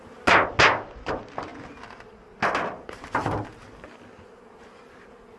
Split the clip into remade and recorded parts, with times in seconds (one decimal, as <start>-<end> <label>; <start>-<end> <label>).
0.0-5.4 recorded